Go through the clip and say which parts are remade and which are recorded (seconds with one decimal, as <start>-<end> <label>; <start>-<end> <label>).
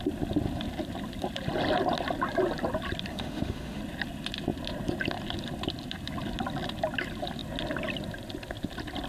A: 0.0-3.1 recorded; 3.1-3.8 remade; 3.8-9.1 recorded